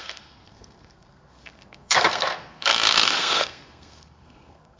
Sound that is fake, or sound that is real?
fake